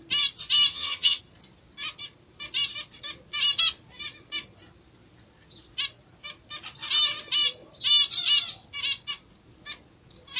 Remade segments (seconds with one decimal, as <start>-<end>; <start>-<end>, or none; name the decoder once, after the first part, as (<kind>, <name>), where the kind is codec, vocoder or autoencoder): 0.7-1.2 (vocoder, HiFi-GAN)